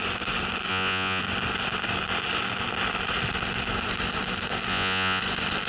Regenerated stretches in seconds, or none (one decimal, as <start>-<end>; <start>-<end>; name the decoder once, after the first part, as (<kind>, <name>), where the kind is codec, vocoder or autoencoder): 0.7-1.2 (vocoder, Vocos); 4.7-5.2